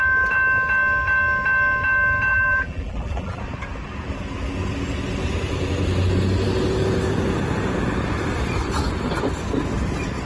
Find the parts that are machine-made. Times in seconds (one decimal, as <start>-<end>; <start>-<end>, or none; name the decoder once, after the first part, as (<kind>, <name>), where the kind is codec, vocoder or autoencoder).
2.3-3.4 (vocoder, BigVGAN v2)